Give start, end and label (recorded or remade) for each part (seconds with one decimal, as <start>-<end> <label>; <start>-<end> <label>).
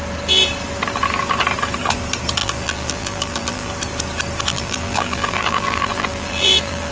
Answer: 0.0-2.4 recorded; 2.4-3.7 remade; 3.7-4.5 recorded; 4.5-6.9 remade